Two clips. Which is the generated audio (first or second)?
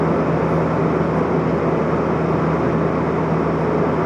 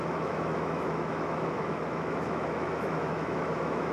second